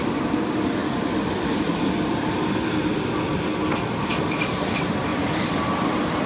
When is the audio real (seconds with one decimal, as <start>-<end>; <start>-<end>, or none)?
0.0-0.8; 2.3-5.1